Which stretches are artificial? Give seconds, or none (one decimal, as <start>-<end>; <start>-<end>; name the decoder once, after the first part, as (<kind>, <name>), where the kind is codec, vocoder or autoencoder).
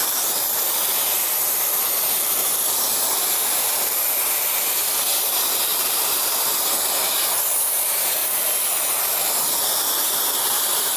2.4-4.1 (vocoder, BigVGAN v2); 5.7-6.3